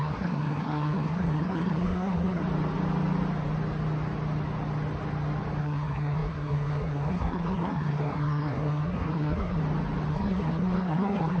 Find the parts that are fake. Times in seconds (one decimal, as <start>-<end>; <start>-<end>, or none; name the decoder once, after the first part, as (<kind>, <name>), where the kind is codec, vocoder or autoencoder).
0.0-2.4 (codec, SNAC); 5.6-9.6; 10.1-11.4

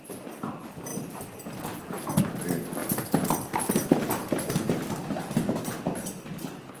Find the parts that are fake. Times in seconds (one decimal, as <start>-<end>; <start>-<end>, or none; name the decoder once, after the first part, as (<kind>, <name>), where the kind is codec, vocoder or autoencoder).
none

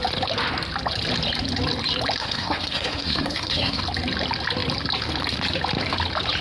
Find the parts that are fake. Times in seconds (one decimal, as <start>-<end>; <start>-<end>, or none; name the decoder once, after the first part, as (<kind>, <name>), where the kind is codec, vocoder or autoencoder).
2.2-3.8 (codec, SNAC)

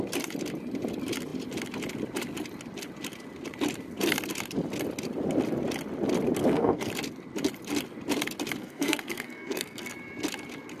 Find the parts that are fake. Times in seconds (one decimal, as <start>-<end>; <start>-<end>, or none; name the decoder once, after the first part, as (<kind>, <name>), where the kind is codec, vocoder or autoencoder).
6.4-6.9 (codec, SNAC); 8.6-9.9

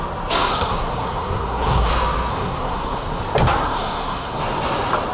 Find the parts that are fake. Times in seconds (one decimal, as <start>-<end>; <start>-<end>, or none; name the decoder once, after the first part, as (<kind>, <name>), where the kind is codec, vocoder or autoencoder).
0.5-1.9 (codec, SNAC); 2.3-3.2; 3.6-4.4

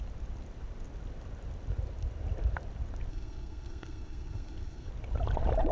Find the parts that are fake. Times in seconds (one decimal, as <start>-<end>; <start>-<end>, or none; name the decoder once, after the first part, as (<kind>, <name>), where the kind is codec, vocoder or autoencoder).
3.1-4.9 (codec, SNAC)